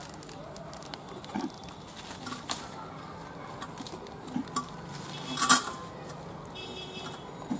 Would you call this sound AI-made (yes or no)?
no